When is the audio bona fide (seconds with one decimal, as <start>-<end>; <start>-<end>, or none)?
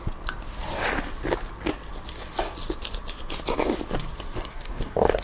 0.0-4.5